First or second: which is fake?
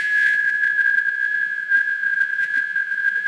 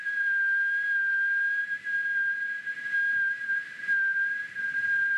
first